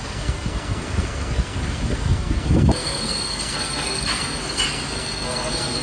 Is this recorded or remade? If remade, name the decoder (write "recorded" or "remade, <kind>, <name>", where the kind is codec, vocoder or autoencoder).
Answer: remade, codec, SNAC